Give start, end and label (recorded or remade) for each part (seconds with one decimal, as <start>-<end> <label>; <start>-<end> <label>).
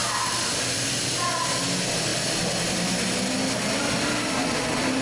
0.0-5.0 recorded